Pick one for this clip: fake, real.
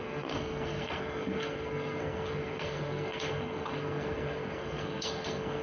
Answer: fake